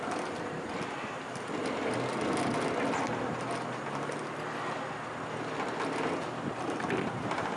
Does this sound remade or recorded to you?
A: recorded